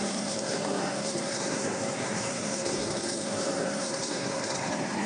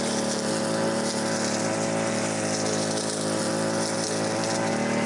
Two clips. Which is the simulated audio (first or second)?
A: first